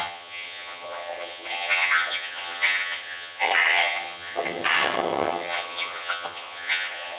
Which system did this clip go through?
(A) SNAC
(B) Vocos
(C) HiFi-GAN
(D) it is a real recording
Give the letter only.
C